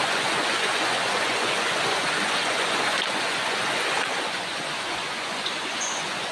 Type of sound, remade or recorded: remade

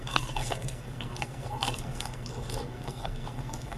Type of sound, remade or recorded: remade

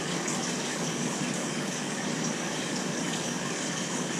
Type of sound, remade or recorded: remade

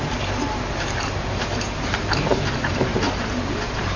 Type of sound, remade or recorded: remade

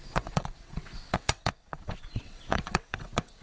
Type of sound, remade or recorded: remade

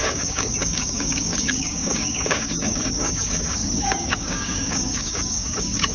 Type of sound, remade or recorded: remade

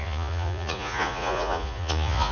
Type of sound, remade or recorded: remade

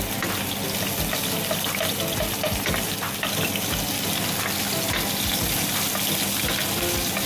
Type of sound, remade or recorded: recorded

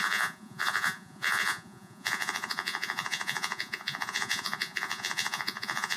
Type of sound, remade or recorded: remade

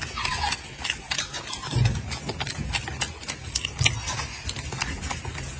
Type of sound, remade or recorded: recorded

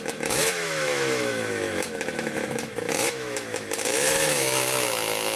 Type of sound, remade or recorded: remade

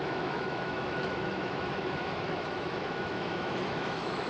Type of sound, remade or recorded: remade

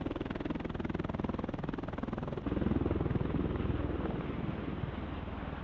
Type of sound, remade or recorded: recorded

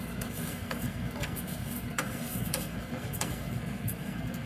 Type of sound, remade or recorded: remade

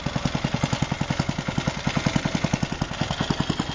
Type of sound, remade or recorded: remade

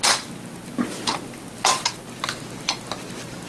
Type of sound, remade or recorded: recorded